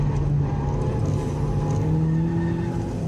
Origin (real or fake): real